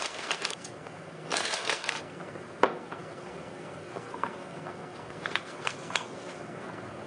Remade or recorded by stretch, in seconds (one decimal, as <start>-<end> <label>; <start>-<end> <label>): 0.0-7.1 remade